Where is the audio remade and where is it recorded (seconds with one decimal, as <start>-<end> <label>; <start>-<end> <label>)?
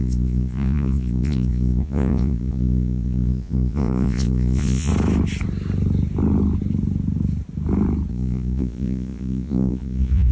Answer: 0.0-4.9 remade; 4.9-8.1 recorded; 8.1-10.3 remade